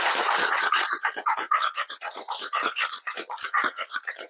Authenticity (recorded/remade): remade